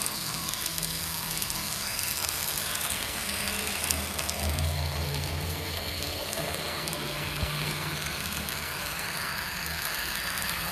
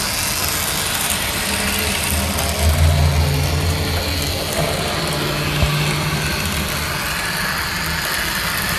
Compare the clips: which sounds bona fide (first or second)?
second